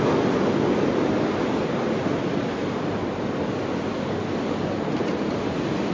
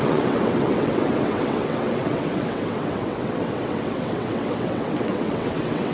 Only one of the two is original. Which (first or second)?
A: first